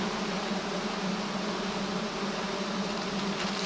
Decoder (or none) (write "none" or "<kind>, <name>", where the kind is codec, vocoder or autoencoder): none